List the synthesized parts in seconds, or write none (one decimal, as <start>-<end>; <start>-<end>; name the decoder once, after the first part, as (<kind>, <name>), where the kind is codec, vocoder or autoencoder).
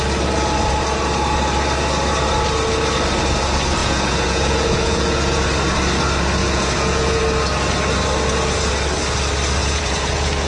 3.8-5.4 (vocoder, Vocos); 6.4-7.2; 9.6-10.5